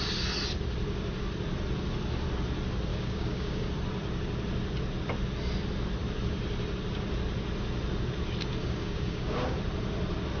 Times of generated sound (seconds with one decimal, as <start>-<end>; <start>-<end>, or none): 2.9-3.7; 8.6-9.6